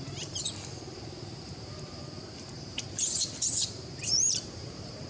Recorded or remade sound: remade